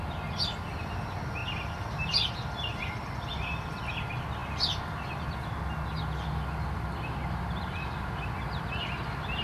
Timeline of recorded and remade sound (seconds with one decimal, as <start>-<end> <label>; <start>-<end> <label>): 0.0-9.4 recorded